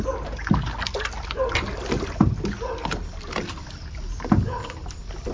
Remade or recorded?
recorded